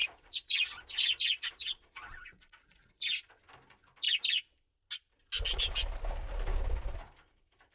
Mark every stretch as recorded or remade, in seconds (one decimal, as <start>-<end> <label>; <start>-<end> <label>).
0.0-3.4 remade; 3.4-7.7 recorded